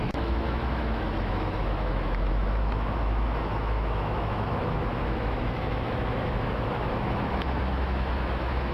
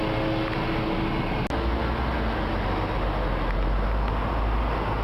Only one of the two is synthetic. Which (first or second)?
first